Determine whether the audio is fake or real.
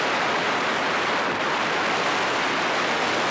real